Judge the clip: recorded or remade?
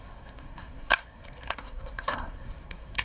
remade